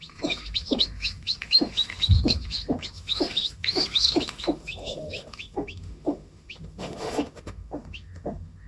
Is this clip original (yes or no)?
no